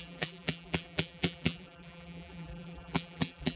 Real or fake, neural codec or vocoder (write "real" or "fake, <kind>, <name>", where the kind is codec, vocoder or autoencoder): fake, vocoder, BigVGAN v2